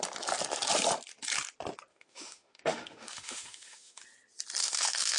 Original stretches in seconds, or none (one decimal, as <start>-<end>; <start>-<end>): 0.0-1.9; 4.0-4.6